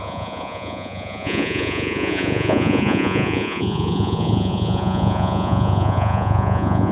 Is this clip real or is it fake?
fake